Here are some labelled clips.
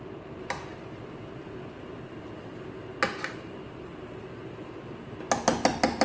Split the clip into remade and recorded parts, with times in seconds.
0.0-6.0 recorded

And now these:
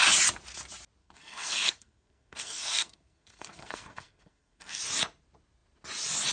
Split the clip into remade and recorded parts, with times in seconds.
0.0-1.0 recorded; 1.0-4.8 remade; 4.8-6.3 recorded

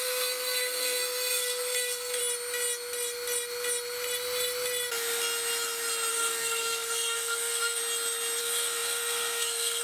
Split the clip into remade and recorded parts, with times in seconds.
0.0-2.2 remade; 2.2-6.1 recorded; 6.1-7.8 remade; 7.8-8.4 recorded; 8.4-9.8 remade

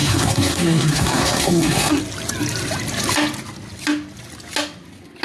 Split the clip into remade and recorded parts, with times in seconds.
0.0-2.0 remade; 2.0-5.2 recorded

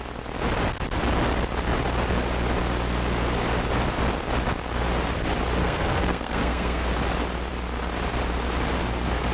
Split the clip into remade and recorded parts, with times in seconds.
0.0-5.6 recorded; 5.6-6.9 remade; 6.9-9.3 recorded

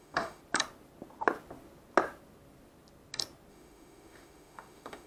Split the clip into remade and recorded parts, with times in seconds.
0.0-0.4 remade; 0.4-3.5 recorded; 3.5-5.1 remade